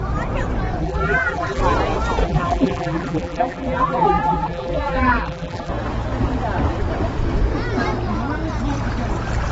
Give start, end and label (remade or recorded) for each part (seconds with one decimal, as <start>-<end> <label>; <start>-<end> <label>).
0.0-0.8 recorded; 0.8-1.6 remade; 1.6-2.2 recorded; 2.2-5.7 remade; 5.7-9.5 recorded